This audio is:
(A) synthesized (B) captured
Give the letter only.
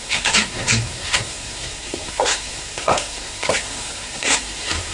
A